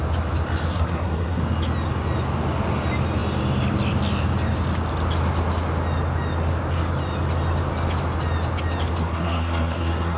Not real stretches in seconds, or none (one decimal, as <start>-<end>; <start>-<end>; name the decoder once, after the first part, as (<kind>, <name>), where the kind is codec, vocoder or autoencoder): 0.7-1.4 (codec, SNAC); 9.0-10.2